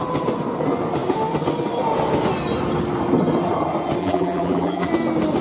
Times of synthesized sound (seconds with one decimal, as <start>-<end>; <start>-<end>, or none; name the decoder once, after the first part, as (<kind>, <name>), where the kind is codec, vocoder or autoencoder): 4.0-4.9 (vocoder, BigVGAN v2)